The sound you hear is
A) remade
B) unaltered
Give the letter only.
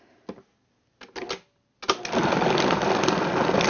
B